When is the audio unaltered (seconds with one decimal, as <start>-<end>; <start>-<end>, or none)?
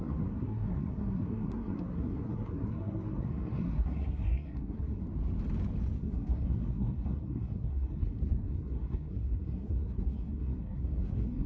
5.0-6.0